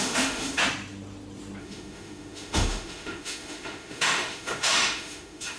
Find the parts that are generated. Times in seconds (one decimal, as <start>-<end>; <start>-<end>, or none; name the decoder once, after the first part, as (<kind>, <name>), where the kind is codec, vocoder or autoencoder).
0.0-0.6 (autoencoder, DAC-VAE); 1.6-5.6